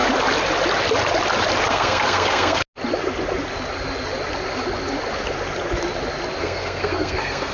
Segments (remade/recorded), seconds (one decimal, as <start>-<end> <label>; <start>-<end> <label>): 0.0-1.7 recorded; 1.7-2.6 remade; 2.6-6.4 recorded; 6.4-7.5 remade

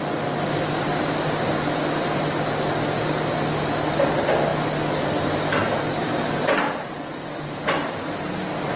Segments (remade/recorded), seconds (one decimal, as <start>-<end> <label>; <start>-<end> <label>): 0.0-8.8 recorded

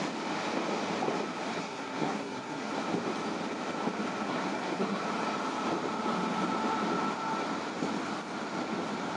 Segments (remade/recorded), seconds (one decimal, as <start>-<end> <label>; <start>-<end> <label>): 0.0-1.6 recorded; 1.6-2.8 remade; 2.8-4.3 recorded; 4.3-5.0 remade; 5.0-9.2 recorded